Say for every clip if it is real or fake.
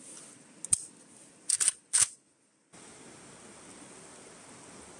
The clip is real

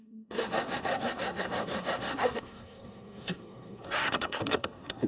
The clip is fake